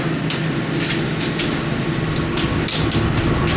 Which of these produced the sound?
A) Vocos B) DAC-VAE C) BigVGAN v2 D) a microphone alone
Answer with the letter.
D